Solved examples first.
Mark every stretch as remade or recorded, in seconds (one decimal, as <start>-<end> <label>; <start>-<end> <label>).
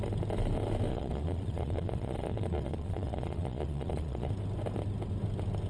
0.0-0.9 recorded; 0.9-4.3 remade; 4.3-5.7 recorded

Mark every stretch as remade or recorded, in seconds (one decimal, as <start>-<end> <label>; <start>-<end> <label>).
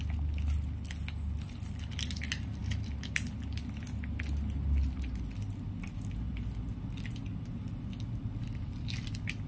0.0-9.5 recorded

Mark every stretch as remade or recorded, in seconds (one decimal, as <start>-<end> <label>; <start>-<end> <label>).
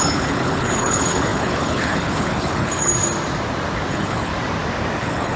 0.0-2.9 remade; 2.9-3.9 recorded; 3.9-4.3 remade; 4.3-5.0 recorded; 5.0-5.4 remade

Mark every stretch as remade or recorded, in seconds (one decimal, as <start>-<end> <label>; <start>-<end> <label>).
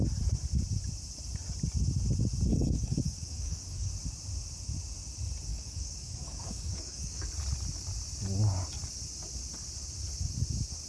0.0-2.5 recorded; 2.5-3.9 remade; 3.9-5.5 recorded; 5.5-7.3 remade; 7.3-10.9 recorded